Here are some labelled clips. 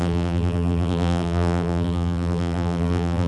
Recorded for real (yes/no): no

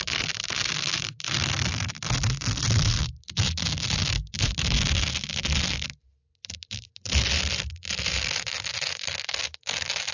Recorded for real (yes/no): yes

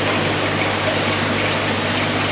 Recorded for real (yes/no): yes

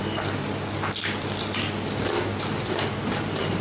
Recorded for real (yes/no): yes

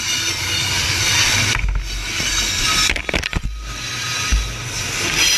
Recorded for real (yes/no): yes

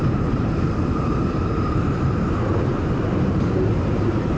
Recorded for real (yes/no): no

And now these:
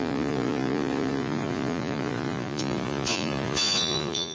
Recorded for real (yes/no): no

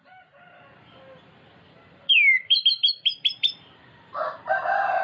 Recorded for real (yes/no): no